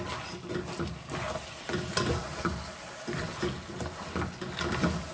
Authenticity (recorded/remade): recorded